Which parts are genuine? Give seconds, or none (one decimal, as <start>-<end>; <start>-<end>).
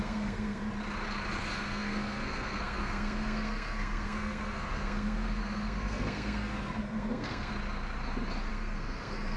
0.6-1.4; 7.5-8.5